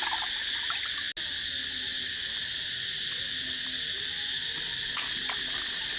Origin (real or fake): real